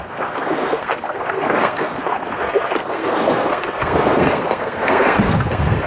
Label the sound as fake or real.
fake